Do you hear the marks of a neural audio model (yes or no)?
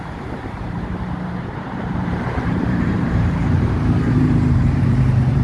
yes